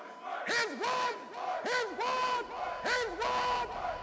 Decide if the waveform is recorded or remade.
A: recorded